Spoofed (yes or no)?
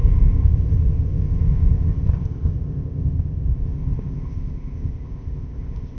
yes